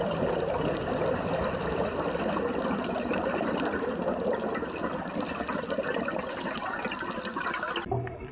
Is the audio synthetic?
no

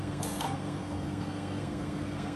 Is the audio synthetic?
yes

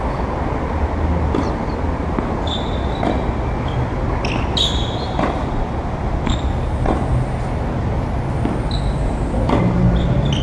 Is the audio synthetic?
no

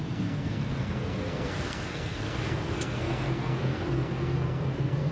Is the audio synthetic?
yes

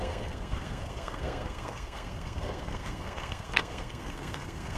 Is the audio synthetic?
yes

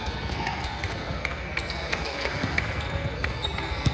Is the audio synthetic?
yes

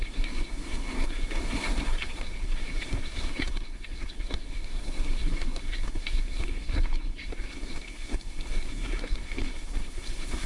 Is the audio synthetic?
yes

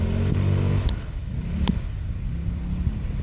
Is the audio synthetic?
no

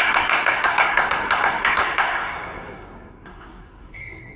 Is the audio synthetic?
yes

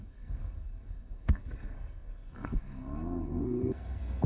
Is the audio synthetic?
yes